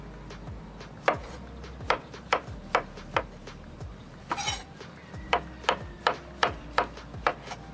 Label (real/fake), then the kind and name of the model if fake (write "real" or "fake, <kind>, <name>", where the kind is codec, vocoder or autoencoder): real